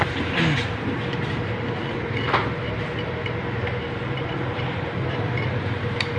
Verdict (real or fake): fake